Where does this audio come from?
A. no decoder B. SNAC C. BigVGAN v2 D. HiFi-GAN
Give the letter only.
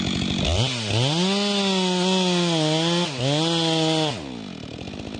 A